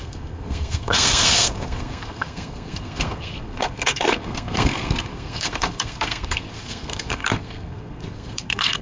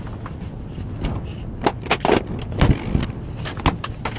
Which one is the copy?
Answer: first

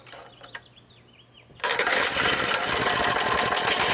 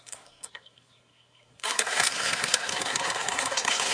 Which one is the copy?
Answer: second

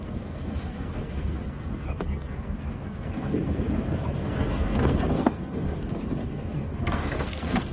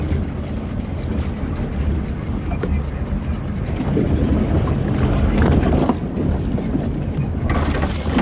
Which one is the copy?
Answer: first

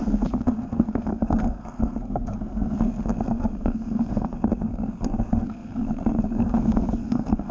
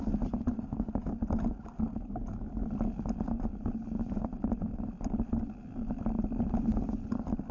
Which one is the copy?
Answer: first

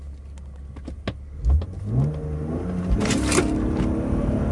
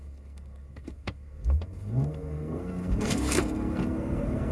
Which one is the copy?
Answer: second